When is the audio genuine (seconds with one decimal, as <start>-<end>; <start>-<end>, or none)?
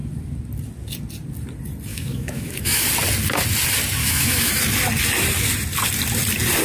0.0-1.9; 2.8-4.0; 4.5-6.6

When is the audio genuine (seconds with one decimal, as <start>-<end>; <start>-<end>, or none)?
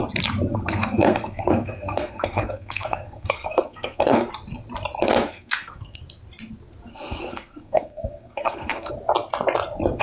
0.0-0.5; 4.3-5.3; 6.0-6.9; 8.9-10.0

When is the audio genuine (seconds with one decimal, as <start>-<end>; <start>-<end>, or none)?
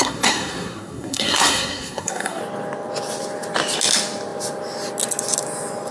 2.4-5.9